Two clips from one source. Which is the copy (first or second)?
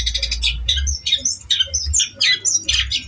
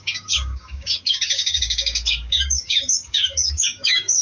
second